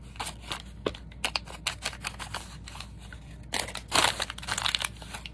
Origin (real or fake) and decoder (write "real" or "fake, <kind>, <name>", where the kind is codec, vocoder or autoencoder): real